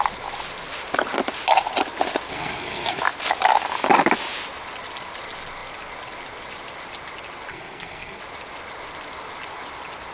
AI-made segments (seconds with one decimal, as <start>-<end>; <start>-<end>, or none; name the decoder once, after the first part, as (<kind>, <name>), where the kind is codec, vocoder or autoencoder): 2.3-3.0 (codec, SNAC); 7.5-8.2